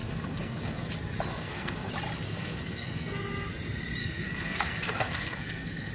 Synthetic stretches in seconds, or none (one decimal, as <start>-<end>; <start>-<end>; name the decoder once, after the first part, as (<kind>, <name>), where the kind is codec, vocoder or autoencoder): 0.0-0.9 (codec, SNAC); 1.3-1.9; 2.3-3.2; 4.0-5.9